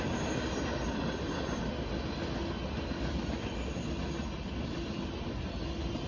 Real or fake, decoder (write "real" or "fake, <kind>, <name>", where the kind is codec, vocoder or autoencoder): real